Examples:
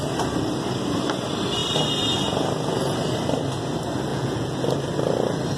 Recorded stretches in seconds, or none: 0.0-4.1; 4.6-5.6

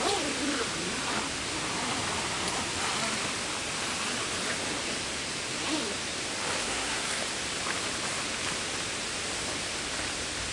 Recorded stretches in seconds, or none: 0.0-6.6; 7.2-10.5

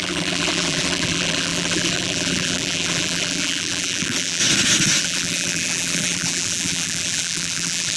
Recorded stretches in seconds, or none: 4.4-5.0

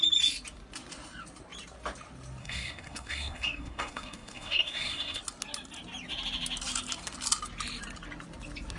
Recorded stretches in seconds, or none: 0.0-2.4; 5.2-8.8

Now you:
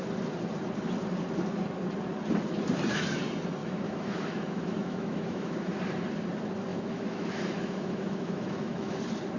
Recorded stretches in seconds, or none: 0.0-3.6; 5.7-6.7; 9.0-9.4

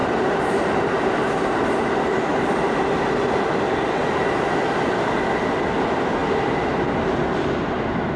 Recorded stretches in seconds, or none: 0.0-8.2

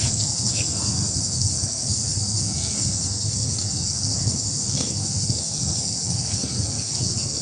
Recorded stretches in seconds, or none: none